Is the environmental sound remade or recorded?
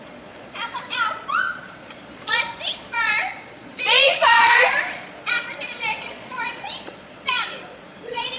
remade